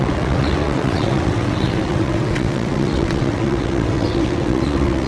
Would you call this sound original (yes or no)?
no